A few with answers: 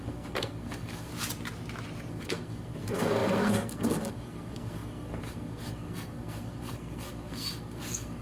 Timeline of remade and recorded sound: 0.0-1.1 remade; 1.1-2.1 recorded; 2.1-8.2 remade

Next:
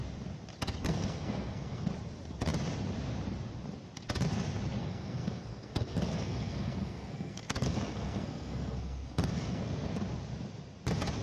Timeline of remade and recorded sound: 0.0-0.8 recorded; 0.8-1.9 remade; 1.9-4.8 recorded; 4.8-9.9 remade; 9.9-11.2 recorded

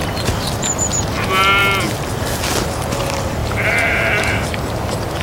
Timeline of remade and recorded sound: 0.0-5.2 recorded